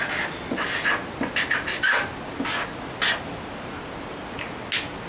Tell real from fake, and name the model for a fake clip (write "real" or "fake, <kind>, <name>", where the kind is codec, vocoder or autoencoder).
real